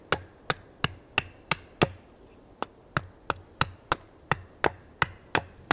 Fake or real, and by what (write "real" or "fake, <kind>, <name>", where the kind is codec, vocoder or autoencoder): real